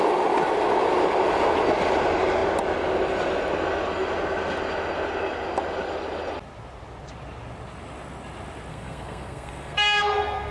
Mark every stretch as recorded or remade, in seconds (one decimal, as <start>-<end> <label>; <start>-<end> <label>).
0.0-8.7 recorded; 8.7-10.5 remade